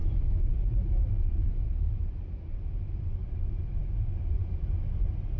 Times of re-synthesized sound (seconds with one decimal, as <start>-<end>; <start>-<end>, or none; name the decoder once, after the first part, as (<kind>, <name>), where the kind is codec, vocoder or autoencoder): 0.5-3.2 (vocoder, BigVGAN v2); 3.8-4.4; 5.0-5.4